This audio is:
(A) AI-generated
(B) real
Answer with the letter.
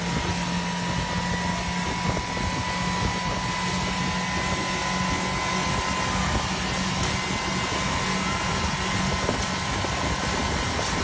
B